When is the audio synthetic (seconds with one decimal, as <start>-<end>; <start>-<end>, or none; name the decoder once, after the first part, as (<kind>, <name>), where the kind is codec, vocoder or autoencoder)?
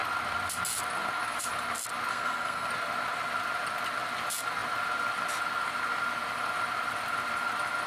2.1-2.7 (codec, SNAC)